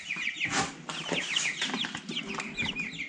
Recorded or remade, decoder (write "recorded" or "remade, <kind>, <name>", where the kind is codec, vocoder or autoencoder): recorded